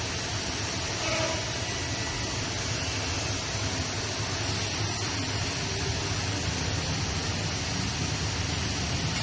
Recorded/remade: recorded